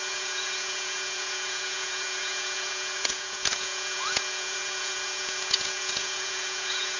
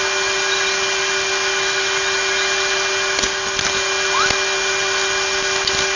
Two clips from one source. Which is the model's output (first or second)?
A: first